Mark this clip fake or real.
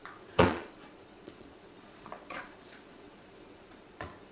fake